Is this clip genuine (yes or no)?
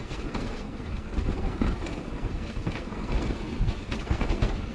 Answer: no